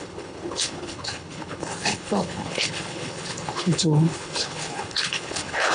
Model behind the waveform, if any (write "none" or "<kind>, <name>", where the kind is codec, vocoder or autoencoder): codec, HILCodec